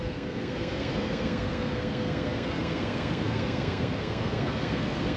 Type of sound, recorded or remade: remade